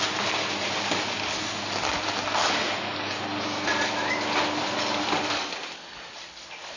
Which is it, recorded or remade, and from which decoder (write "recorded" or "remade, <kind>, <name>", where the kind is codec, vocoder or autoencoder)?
recorded